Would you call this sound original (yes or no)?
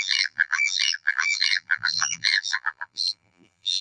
no